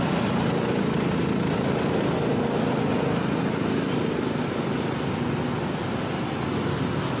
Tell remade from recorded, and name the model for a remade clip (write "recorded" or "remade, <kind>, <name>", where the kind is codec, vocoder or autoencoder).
recorded